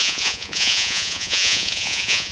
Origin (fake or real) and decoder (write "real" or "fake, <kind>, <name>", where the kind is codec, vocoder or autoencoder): fake, vocoder, Vocos